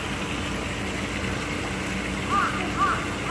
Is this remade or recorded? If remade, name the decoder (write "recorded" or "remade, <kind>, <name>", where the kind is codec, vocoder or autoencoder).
recorded